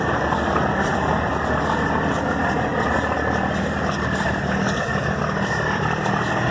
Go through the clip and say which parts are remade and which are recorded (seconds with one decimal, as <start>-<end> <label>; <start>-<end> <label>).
0.0-6.5 recorded

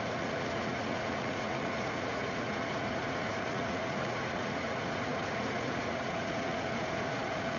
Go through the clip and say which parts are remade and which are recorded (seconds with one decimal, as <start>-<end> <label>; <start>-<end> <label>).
0.0-7.6 remade

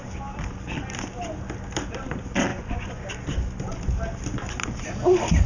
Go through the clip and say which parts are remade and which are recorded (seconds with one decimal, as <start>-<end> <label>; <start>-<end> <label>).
0.0-2.5 recorded; 2.5-3.1 remade; 3.1-5.5 recorded